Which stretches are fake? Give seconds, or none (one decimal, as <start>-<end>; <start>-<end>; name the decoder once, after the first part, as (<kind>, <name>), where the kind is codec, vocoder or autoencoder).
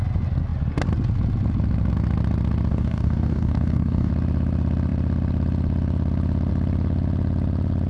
2.7-4.1 (codec, DAC)